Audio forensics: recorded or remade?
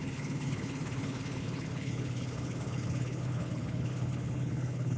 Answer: remade